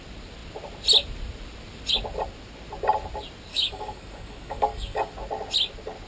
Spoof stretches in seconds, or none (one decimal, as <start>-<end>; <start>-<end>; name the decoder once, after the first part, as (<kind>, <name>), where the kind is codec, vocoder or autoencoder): 3.5-5.1 (codec, DAC)